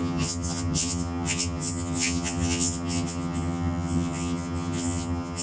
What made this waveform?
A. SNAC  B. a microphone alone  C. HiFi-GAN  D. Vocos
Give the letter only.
C